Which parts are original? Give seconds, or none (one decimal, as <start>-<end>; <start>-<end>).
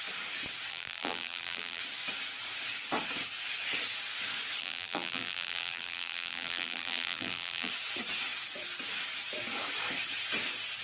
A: 0.0-0.7; 1.8-4.6; 7.7-10.8